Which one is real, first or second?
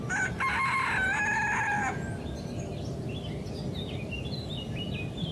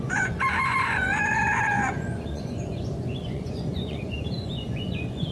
first